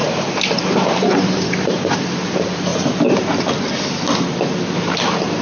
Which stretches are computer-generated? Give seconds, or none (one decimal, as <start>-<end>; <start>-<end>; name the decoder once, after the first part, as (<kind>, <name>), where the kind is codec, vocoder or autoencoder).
0.0-2.7 (vocoder, BigVGAN v2); 5.0-5.4